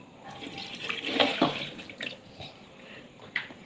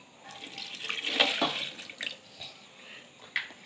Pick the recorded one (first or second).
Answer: second